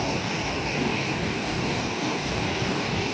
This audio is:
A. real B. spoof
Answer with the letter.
B